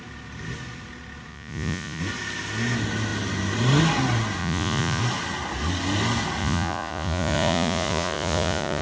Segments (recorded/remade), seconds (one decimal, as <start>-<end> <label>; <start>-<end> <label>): 0.0-1.3 recorded; 1.3-2.0 remade; 2.0-4.4 recorded; 4.4-5.0 remade; 5.0-6.4 recorded; 6.4-8.8 remade